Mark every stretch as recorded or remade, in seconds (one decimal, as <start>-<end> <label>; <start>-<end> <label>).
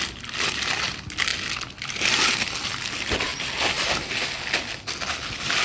0.0-5.6 recorded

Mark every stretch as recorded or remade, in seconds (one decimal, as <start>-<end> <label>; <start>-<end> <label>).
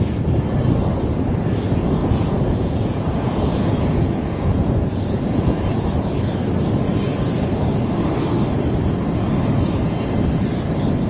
0.0-2.0 recorded; 2.0-6.2 remade; 6.2-11.1 recorded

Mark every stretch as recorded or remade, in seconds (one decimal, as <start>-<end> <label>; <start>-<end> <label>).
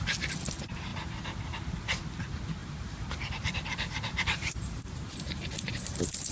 0.0-0.9 recorded; 0.9-2.0 remade; 2.0-2.6 recorded; 2.6-6.3 remade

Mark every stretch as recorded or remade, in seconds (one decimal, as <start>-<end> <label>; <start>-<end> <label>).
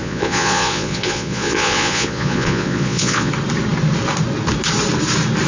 0.0-3.3 remade; 3.3-5.5 recorded